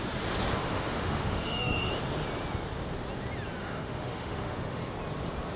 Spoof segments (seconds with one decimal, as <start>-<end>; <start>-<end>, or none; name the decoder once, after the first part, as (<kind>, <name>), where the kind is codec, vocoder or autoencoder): 0.6-1.9 (autoencoder, DAC-VAE); 3.6-4.8